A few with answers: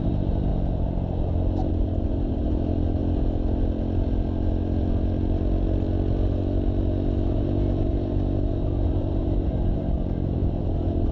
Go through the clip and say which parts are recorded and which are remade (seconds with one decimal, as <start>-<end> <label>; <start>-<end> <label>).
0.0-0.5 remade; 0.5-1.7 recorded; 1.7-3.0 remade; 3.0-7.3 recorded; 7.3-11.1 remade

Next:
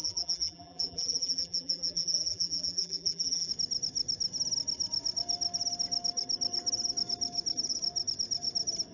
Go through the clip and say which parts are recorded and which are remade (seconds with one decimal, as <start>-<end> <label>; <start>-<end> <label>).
0.0-3.5 remade; 3.5-8.9 recorded

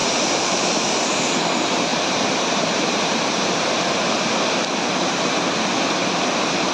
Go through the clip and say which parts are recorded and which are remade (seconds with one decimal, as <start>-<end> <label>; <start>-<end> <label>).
0.0-1.4 remade; 1.4-1.9 recorded; 1.9-3.7 remade; 3.7-6.7 recorded

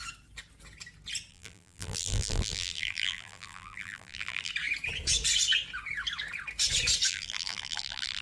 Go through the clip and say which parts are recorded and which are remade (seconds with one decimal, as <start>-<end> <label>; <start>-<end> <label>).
0.0-1.3 recorded; 1.3-4.5 remade; 4.5-7.1 recorded; 7.1-8.2 remade

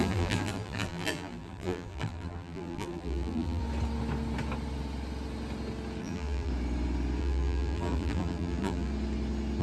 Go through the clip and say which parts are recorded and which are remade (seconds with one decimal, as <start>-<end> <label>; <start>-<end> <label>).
0.0-3.6 remade; 3.6-6.0 recorded; 6.0-6.5 remade; 6.5-7.2 recorded; 7.2-8.9 remade; 8.9-9.6 recorded